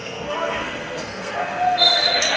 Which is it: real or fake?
fake